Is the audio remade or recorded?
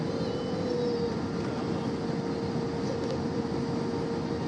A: recorded